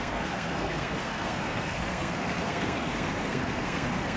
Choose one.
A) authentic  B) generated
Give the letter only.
B